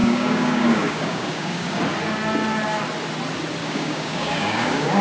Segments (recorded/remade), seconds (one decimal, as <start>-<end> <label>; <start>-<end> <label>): 0.0-1.8 remade; 1.8-3.6 recorded; 3.6-5.0 remade